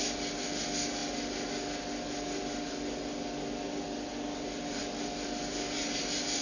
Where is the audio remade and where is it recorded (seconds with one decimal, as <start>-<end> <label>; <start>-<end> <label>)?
0.0-6.4 recorded